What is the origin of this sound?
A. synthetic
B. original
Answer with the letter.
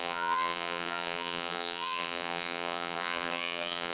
A